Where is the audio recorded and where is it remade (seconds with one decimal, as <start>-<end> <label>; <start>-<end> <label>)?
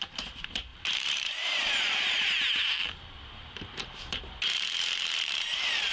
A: 0.0-5.9 remade